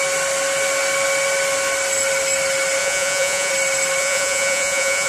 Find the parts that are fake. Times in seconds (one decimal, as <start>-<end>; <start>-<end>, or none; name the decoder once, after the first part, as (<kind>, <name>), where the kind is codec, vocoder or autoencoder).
2.8-3.5 (vocoder, Vocos); 4.0-5.1